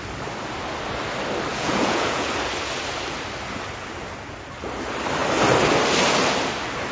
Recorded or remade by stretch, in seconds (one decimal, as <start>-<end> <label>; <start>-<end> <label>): 0.0-1.5 recorded; 1.5-2.3 remade; 2.3-6.9 recorded